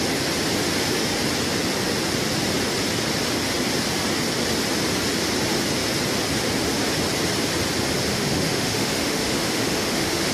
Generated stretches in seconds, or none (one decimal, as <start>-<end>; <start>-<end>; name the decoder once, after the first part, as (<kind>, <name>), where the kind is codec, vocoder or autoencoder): 8.1-10.3 (autoencoder, DAC-VAE)